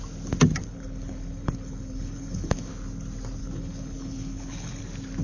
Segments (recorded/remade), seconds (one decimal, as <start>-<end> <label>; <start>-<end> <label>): 0.0-0.6 recorded; 0.6-2.7 remade; 2.7-3.4 recorded; 3.4-4.8 remade; 4.8-5.2 recorded